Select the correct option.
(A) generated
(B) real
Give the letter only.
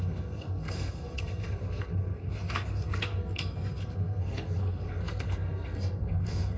A